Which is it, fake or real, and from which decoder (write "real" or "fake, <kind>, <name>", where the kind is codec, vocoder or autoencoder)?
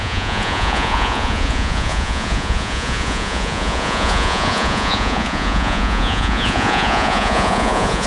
fake, vocoder, Vocos